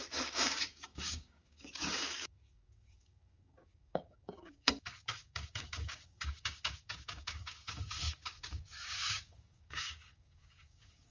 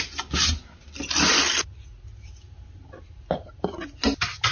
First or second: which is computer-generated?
first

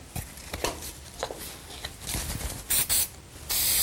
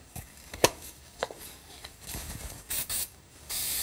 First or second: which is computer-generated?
second